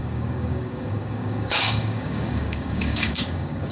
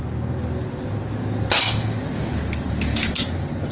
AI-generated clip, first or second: first